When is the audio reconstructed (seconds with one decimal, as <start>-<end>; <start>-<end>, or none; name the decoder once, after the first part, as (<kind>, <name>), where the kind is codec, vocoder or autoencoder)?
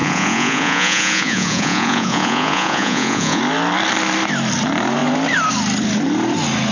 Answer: 0.0-3.4 (vocoder, Vocos)